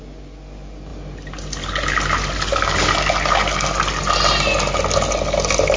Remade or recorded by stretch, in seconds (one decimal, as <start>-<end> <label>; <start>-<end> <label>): 0.0-5.8 recorded